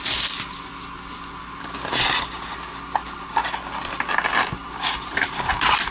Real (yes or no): yes